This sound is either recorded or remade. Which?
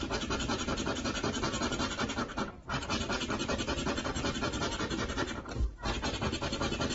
remade